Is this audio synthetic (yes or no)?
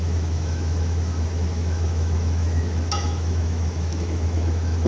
yes